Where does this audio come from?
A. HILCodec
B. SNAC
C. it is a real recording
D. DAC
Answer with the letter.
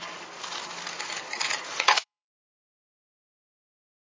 D